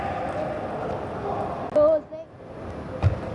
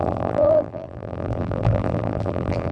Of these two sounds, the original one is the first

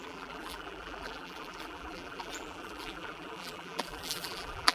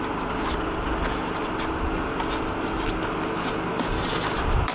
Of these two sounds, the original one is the second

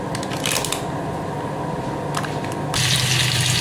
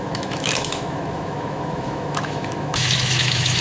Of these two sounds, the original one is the first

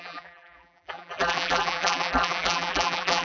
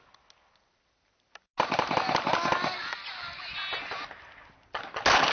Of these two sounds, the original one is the second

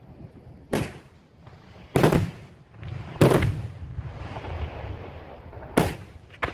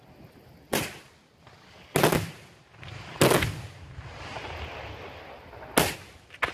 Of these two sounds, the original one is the second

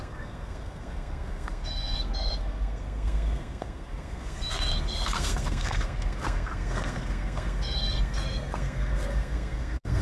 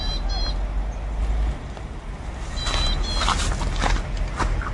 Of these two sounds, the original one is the second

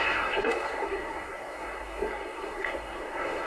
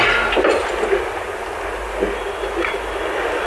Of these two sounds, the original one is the second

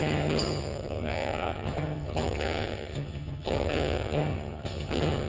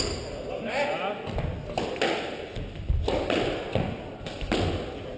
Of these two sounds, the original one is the second